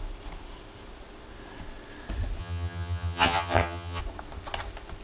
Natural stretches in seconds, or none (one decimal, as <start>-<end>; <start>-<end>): 0.0-2.4; 4.0-5.0